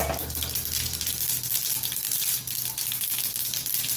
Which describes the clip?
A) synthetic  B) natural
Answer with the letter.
B